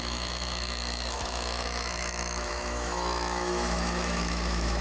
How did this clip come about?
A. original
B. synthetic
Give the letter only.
B